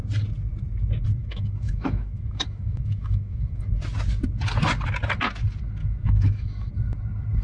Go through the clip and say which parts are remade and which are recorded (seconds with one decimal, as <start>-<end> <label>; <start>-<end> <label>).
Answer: 0.0-1.2 recorded; 1.2-3.7 remade; 3.7-5.8 recorded; 5.8-6.7 remade; 6.7-7.4 recorded